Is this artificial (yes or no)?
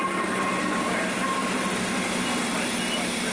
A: no